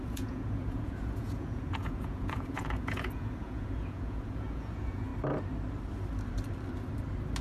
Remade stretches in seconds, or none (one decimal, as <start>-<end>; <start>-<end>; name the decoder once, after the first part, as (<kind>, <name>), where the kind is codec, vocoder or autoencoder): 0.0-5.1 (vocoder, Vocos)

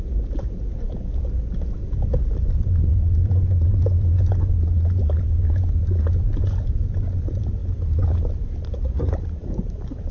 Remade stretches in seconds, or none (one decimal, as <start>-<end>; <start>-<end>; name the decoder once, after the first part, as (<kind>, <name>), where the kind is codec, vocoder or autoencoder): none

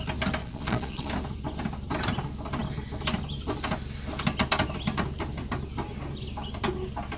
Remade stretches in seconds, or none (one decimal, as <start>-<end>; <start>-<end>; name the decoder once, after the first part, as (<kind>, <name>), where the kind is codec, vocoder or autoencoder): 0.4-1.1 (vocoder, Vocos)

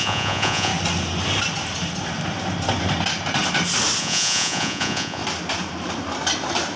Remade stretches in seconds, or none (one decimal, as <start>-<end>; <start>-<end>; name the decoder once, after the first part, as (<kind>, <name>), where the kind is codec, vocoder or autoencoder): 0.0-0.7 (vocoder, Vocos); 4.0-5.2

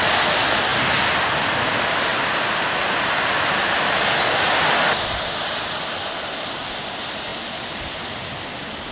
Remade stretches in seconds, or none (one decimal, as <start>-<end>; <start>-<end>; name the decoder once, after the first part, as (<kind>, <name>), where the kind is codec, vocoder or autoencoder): none

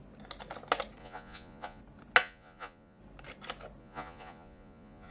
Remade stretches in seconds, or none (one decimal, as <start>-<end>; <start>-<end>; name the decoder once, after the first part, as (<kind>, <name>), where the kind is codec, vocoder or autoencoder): 1.0-1.8 (vocoder, Vocos); 2.2-3.0; 3.8-5.1

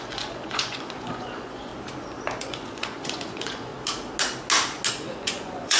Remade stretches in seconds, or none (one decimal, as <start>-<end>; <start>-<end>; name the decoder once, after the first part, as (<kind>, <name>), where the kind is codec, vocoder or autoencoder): 0.0-1.7 (vocoder, Vocos); 2.4-3.7; 4.9-5.8